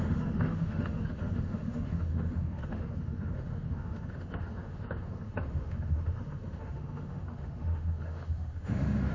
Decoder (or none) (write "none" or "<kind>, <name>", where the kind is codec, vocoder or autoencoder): autoencoder, DAC-VAE